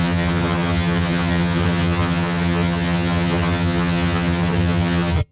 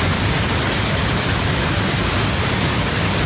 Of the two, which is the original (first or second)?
second